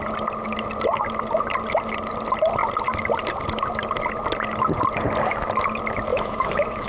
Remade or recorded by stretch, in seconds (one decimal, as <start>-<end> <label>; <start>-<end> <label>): 0.0-6.1 recorded; 6.1-6.9 remade